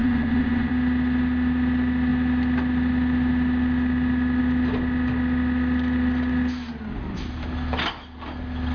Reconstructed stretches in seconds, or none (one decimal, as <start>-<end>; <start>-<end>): 0.0-0.7